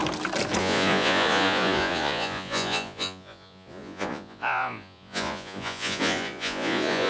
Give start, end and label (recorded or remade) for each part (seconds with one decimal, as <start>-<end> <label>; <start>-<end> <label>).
0.0-0.6 recorded; 0.6-7.1 remade